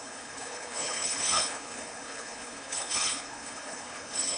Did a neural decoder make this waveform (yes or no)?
yes